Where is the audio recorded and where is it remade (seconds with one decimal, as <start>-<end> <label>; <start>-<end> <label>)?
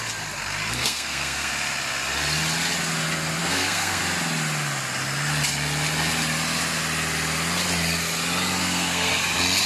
0.0-0.8 recorded; 0.8-1.5 remade; 1.5-3.4 recorded; 3.4-4.0 remade; 4.0-8.6 recorded; 8.6-9.1 remade; 9.1-9.7 recorded